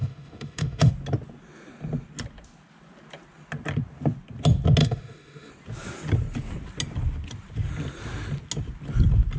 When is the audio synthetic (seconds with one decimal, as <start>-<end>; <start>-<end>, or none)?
0.0-0.9; 4.8-5.5